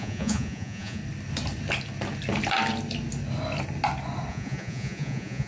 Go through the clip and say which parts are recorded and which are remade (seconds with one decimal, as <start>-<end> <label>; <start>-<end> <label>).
0.0-1.0 remade; 1.0-4.3 recorded; 4.3-5.5 remade